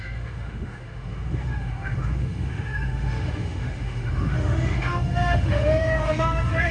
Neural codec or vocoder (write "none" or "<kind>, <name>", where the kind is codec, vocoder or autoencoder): autoencoder, DAC-VAE